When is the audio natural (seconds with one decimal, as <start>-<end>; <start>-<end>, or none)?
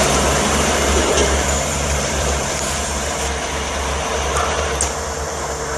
0.0-1.2; 2.8-5.8